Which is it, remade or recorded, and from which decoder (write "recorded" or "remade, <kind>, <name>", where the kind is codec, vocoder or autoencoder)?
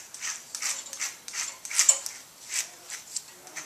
recorded